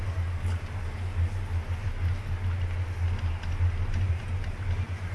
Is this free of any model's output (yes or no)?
yes